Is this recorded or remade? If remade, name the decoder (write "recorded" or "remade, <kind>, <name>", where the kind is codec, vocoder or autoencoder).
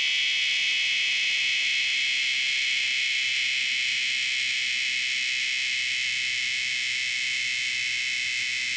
recorded